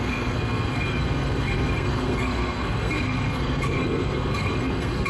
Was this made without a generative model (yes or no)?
no